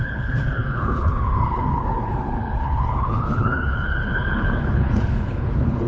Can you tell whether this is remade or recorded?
remade